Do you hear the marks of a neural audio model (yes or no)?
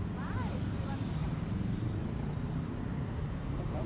no